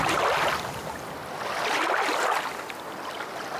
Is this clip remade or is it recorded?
recorded